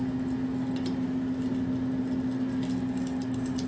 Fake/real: real